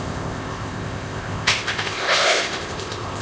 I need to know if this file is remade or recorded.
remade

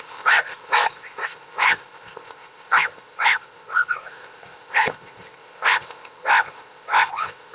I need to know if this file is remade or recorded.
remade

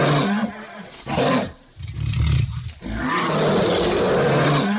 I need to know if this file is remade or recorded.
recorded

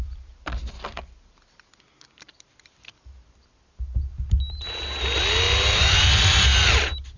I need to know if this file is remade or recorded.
recorded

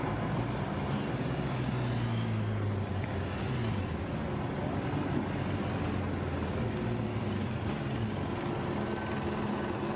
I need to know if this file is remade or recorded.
recorded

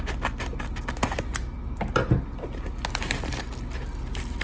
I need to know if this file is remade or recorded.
recorded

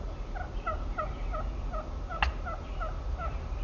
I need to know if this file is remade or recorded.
recorded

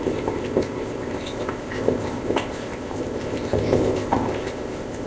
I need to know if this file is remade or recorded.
remade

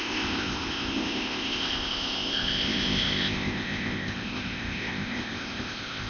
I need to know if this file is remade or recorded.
remade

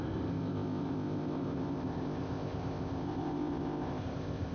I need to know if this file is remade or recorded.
remade